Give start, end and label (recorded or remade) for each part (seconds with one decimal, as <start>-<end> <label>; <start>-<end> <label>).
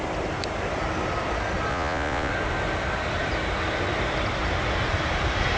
0.0-1.7 recorded; 1.7-2.3 remade; 2.3-5.6 recorded